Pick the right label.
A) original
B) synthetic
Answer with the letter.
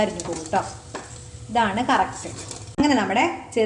A